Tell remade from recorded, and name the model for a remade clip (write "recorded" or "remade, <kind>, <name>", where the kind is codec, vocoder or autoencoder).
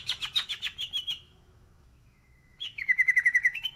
remade, autoencoder, DAC-VAE